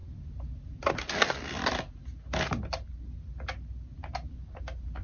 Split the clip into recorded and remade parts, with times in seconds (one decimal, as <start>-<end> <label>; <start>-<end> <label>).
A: 0.0-5.0 recorded